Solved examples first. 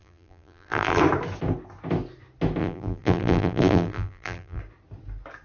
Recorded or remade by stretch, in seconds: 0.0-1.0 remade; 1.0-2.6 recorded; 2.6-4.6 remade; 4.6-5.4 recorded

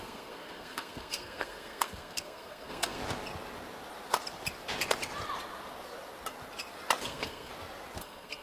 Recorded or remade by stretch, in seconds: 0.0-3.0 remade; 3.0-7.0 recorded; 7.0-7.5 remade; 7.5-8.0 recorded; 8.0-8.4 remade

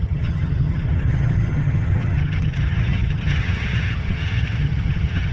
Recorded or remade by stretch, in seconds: 0.0-5.3 remade

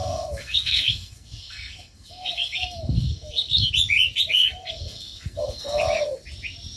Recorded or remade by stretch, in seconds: 0.0-3.7 remade; 3.7-4.3 recorded; 4.3-5.8 remade; 5.8-6.8 recorded

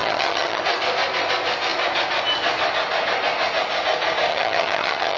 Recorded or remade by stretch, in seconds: 0.0-0.6 remade; 0.6-4.3 recorded; 4.3-5.2 remade

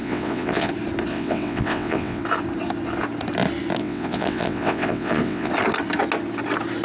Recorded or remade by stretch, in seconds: 0.0-0.7 remade; 0.7-1.1 recorded; 1.1-2.2 remade; 2.2-3.8 recorded; 3.8-5.5 remade; 5.5-6.8 recorded

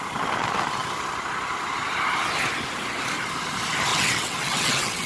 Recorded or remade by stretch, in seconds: 0.0-3.9 recorded; 3.9-5.1 remade